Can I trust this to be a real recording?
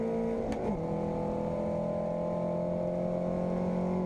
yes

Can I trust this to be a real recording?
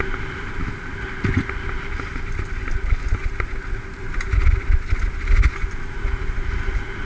yes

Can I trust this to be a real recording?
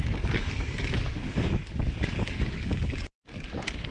no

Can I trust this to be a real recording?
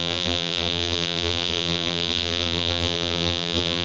no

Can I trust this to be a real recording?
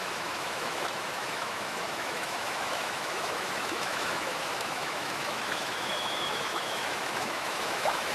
no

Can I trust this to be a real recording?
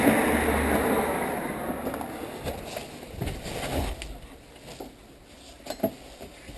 yes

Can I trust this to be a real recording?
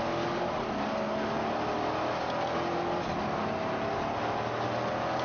yes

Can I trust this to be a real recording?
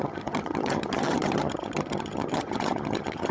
no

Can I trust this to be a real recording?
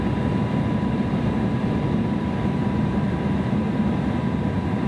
no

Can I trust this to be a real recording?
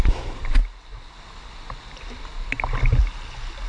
yes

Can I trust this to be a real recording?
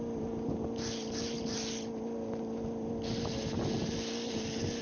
yes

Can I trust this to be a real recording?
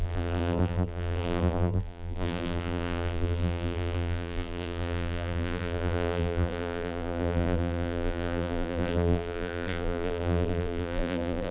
no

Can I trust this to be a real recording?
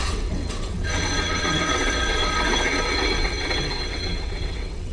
no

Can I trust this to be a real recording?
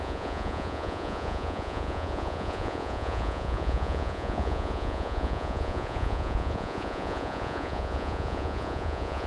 no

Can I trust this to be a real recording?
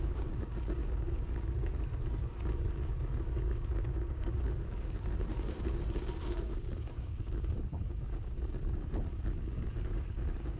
no